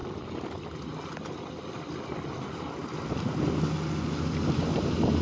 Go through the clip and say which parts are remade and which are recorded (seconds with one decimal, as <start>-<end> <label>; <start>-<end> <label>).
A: 0.0-5.2 recorded